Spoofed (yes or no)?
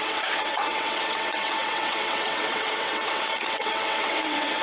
yes